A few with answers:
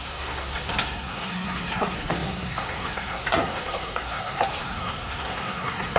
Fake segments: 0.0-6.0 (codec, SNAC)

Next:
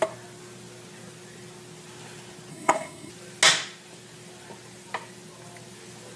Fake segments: 2.5-3.1 (codec, SNAC)

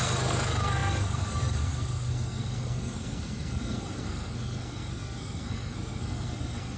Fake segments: 0.0-6.8 (codec, SNAC)

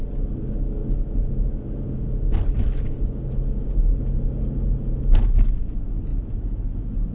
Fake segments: none

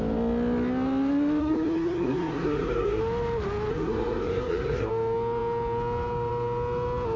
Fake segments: 1.4-3.0 (codec, SNAC); 3.7-4.9

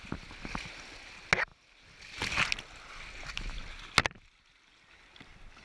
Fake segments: none

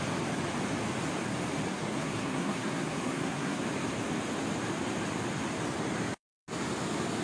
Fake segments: 1.7-3.6 (codec, SNAC)